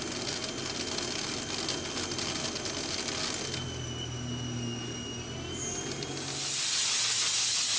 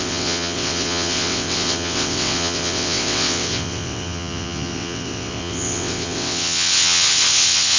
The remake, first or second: second